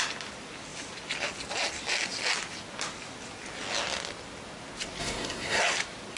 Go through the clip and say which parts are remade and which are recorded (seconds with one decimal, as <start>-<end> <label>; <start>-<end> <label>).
0.0-5.0 recorded; 5.0-5.6 remade; 5.6-6.2 recorded